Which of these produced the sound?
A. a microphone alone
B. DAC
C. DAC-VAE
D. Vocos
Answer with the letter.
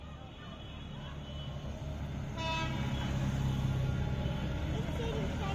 A